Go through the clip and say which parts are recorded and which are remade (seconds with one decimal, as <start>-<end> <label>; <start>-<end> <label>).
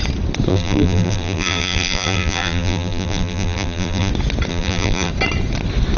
0.0-0.5 recorded; 0.5-4.1 remade; 4.1-4.5 recorded; 4.5-5.1 remade; 5.1-6.0 recorded